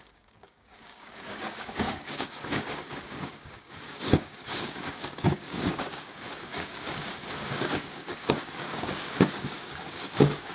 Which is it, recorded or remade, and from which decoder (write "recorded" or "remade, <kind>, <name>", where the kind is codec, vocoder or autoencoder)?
remade, codec, DAC